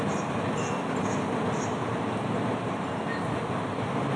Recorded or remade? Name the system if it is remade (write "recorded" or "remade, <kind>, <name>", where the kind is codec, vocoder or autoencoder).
recorded